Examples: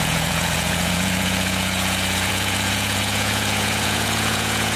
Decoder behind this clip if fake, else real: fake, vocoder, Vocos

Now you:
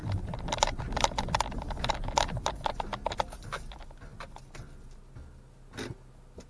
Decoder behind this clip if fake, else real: real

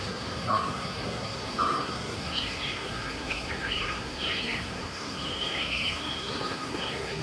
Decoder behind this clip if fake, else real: fake, codec, SNAC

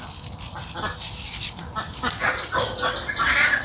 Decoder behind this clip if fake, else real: real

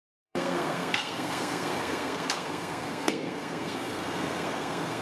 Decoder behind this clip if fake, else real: fake, codec, SNAC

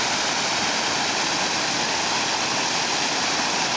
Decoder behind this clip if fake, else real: real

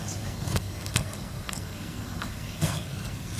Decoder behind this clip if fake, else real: fake, codec, SNAC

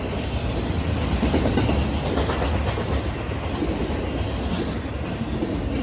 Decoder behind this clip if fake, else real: real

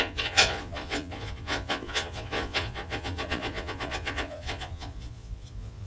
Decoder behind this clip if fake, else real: fake, vocoder, Vocos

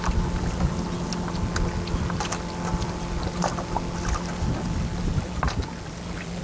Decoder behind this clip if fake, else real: real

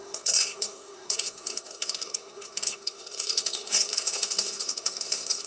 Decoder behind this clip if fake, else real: fake, codec, SNAC